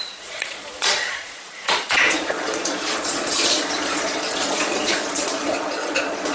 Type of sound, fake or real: fake